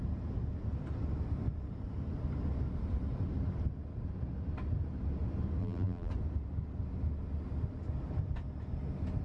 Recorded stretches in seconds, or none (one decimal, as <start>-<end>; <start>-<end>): 0.0-5.6; 6.1-9.2